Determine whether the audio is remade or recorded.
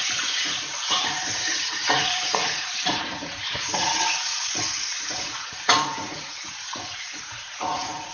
remade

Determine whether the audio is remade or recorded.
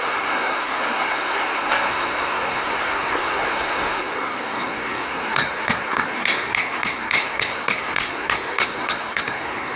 remade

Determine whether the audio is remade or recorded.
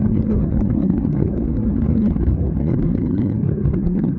remade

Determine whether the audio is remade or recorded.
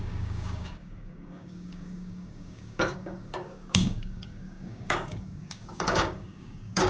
remade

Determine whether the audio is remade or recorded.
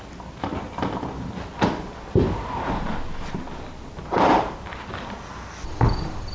recorded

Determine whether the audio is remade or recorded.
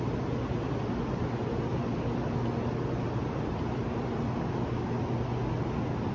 recorded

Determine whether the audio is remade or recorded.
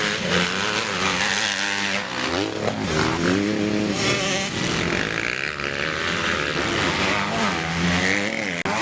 recorded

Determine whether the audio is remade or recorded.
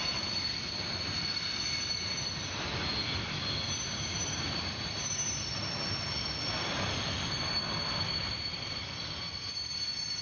recorded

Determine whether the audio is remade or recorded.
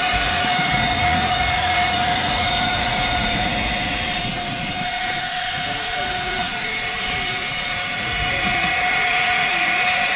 remade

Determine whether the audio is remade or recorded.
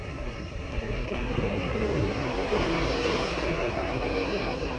remade